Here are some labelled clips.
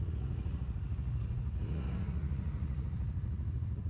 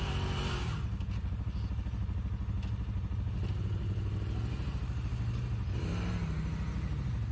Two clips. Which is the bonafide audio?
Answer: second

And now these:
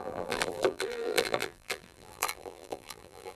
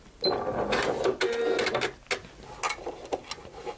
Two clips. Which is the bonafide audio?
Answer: second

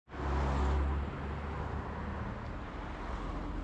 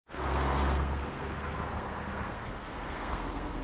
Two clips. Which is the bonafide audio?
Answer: first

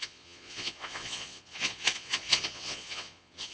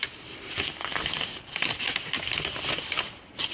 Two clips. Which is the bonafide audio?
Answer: second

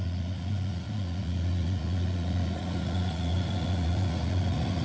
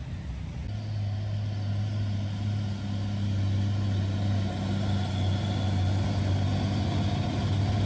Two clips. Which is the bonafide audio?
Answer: second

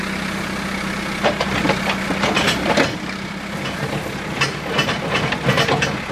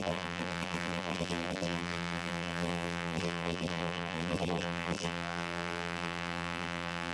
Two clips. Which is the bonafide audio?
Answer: first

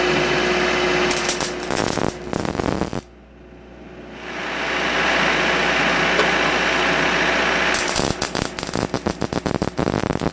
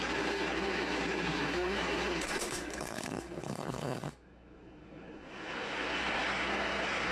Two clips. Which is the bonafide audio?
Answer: first